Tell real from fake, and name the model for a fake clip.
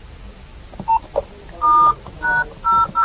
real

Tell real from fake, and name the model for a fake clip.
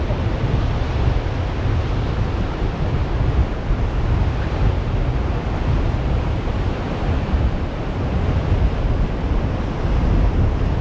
real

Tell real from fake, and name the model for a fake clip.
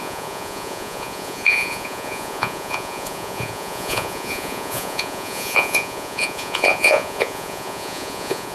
fake, vocoder, Vocos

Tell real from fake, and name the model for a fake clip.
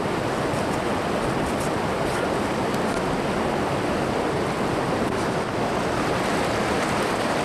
real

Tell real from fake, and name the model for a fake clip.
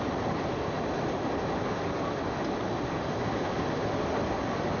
real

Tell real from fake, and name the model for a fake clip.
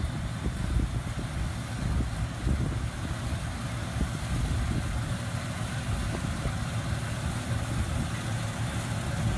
real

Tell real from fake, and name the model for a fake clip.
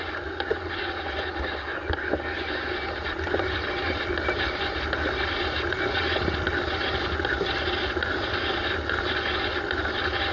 real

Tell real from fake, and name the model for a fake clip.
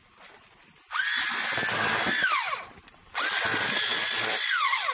real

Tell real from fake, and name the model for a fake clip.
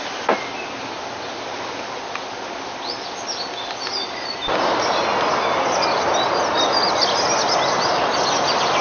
real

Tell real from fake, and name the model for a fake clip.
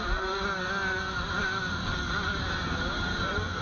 real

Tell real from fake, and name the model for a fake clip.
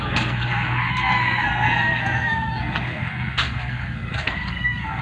fake, codec, SNAC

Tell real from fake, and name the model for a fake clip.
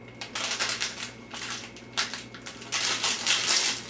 real